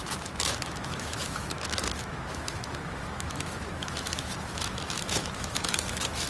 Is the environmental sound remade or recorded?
remade